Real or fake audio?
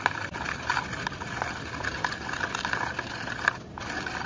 real